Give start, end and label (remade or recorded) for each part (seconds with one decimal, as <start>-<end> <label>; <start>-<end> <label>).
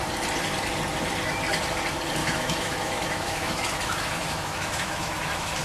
0.0-2.2 recorded; 2.2-5.6 remade